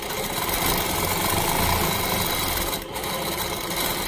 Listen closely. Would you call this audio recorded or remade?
recorded